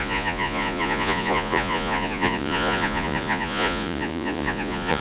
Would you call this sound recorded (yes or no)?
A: no